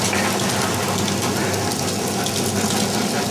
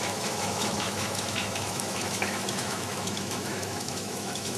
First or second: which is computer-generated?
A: second